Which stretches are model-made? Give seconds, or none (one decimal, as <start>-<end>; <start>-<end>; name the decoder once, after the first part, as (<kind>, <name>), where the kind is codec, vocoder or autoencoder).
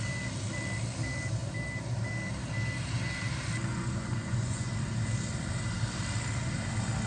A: 3.7-4.7 (vocoder, Vocos)